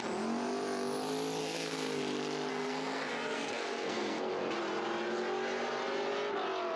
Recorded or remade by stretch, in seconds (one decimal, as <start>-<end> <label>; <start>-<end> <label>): 0.0-1.4 recorded; 1.4-2.0 remade; 2.0-2.5 recorded; 2.5-4.3 remade; 4.3-6.8 recorded

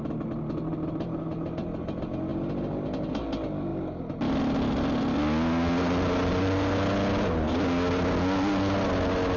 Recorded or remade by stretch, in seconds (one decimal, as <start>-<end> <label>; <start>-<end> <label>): 0.0-9.4 recorded

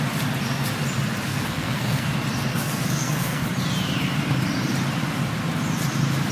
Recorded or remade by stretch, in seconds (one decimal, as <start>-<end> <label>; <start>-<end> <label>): 0.0-1.3 recorded; 1.3-2.1 remade; 2.1-2.5 recorded; 2.5-3.4 remade; 3.4-6.3 recorded